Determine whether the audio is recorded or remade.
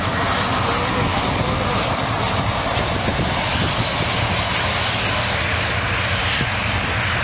recorded